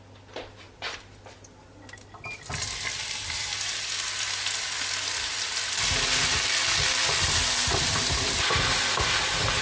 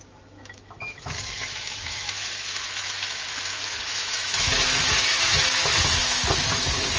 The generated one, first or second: second